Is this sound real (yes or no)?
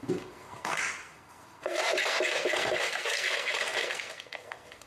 no